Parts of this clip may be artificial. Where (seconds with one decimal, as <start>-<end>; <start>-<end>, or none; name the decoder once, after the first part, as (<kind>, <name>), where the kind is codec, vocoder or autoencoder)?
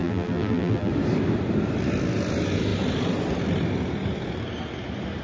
0.0-0.9 (vocoder, BigVGAN v2)